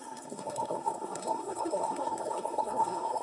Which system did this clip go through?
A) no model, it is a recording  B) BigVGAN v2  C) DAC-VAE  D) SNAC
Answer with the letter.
D